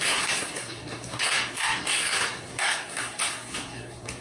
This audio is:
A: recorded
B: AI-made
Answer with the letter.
B